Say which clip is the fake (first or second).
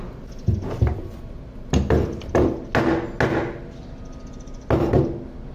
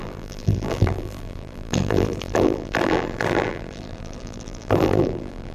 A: second